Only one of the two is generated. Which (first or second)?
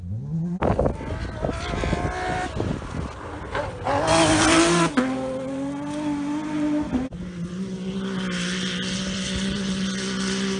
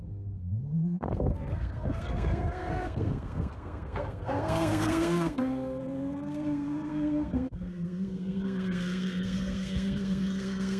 second